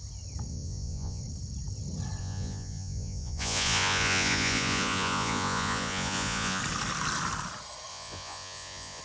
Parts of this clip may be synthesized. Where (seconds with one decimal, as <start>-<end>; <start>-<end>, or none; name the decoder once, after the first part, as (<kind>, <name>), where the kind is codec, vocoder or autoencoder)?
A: 0.5-1.2 (vocoder, Vocos); 2.2-6.6; 7.9-9.0